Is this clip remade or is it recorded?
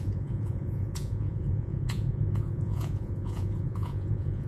remade